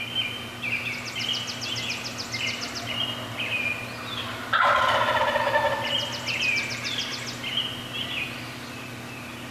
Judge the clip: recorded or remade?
recorded